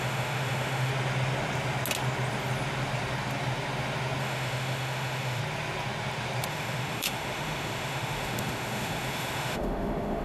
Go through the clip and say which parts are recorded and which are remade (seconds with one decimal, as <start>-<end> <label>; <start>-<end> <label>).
0.0-0.9 remade; 0.9-4.2 recorded; 4.2-5.4 remade; 5.4-6.5 recorded; 6.5-10.2 remade